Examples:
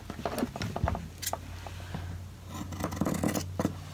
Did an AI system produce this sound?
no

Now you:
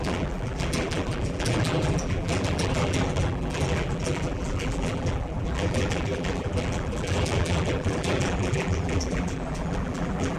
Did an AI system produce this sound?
yes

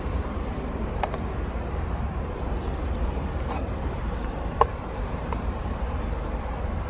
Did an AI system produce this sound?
yes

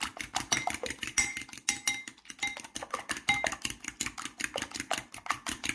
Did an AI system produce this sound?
no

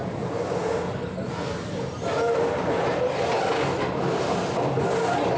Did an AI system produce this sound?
no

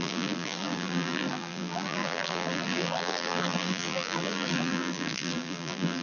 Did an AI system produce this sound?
yes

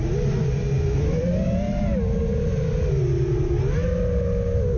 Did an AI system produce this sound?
no